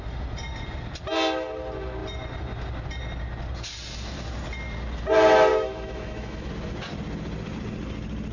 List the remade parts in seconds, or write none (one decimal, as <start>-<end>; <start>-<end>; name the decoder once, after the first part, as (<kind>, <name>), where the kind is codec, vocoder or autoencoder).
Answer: 5.5-6.5 (autoencoder, DAC-VAE)